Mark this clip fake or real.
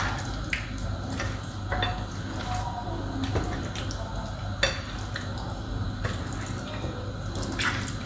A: real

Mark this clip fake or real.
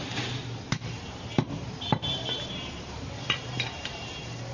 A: fake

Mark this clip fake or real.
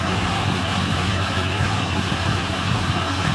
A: fake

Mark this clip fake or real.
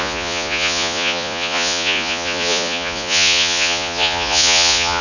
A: fake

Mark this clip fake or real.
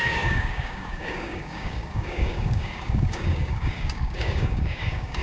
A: fake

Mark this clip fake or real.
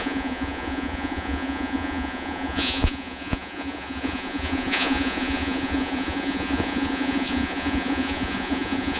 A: fake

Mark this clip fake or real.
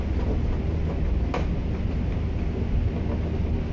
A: real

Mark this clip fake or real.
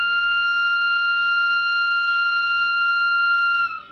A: fake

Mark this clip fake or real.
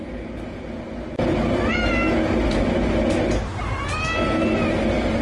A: real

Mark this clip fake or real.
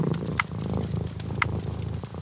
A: real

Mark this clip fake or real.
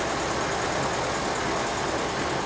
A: real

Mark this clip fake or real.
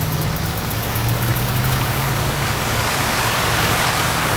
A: fake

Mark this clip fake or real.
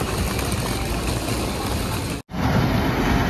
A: real